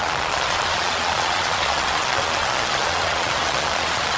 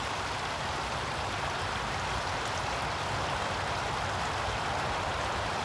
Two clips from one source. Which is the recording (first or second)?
second